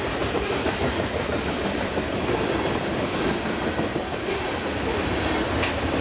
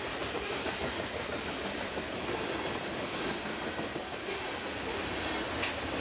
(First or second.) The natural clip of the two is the second